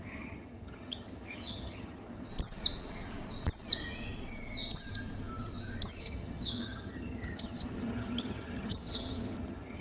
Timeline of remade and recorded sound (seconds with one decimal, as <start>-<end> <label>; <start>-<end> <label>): 0.0-2.3 remade; 2.3-6.0 recorded; 6.0-9.8 remade